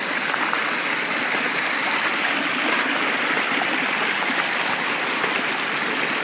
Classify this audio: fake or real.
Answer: real